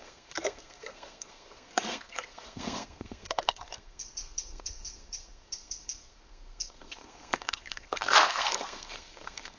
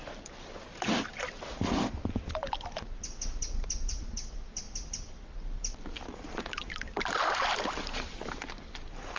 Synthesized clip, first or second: first